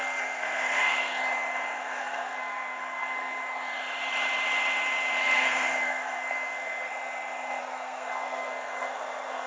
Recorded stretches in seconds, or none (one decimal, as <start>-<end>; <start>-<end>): 1.2-1.8; 3.4-5.2; 6.9-7.6